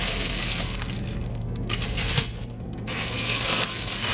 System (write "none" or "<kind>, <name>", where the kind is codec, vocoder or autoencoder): codec, SNAC